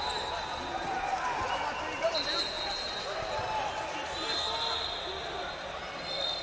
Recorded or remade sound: recorded